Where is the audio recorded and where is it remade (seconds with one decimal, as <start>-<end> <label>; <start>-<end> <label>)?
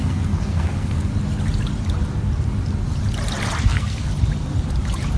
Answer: 0.0-1.1 remade; 1.1-3.6 recorded; 3.6-4.1 remade; 4.1-5.2 recorded